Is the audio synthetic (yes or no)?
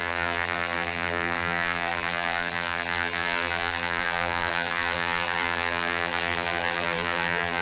yes